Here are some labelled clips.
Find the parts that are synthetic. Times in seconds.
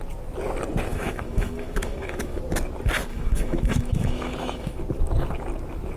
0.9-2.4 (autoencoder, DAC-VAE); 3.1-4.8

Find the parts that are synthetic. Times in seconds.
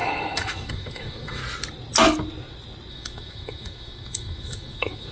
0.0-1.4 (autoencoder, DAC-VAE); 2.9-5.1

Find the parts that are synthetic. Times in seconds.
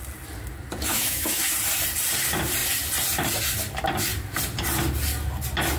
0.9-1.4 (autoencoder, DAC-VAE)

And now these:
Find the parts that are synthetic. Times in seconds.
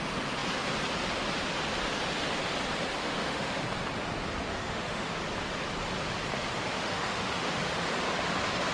3.0-3.6 (autoencoder, DAC-VAE); 4.5-5.1; 6.7-7.6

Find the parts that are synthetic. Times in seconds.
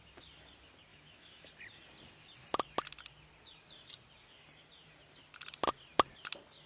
0.9-1.5 (autoencoder, DAC-VAE)